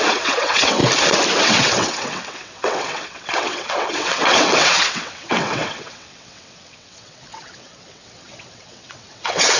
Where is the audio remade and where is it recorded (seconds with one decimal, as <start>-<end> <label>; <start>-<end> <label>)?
0.0-0.8 remade; 0.8-1.4 recorded; 1.4-9.6 remade